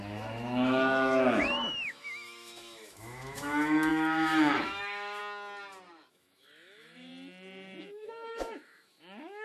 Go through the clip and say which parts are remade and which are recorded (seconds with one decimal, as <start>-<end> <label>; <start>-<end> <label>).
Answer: 0.0-5.2 remade; 5.2-6.1 recorded; 6.1-7.1 remade; 7.1-7.8 recorded; 7.8-9.4 remade